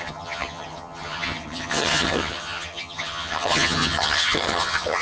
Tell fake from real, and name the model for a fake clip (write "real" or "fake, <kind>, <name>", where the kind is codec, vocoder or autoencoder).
fake, vocoder, HiFi-GAN